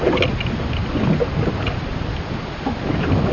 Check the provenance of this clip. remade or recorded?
recorded